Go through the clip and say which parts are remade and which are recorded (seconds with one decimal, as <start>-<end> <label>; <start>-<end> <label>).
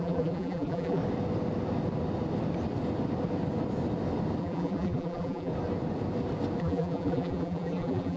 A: 0.0-1.0 remade; 1.0-4.4 recorded; 4.4-5.5 remade; 5.5-6.6 recorded; 6.6-8.2 remade